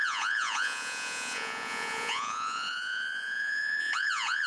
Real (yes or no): no